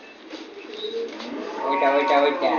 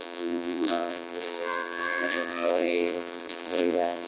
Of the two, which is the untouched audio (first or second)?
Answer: first